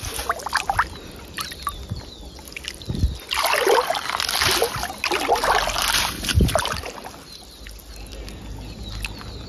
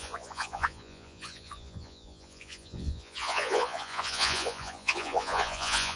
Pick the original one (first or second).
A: first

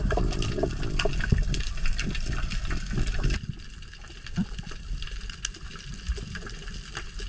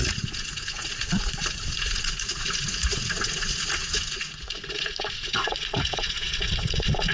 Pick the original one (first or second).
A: first